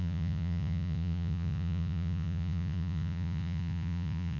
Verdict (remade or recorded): remade